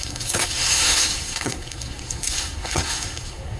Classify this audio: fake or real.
fake